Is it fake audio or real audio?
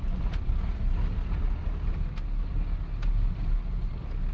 real